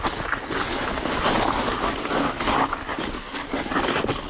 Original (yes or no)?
yes